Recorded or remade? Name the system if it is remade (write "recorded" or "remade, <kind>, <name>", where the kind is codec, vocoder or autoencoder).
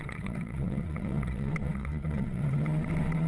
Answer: remade, vocoder, WaveNeXt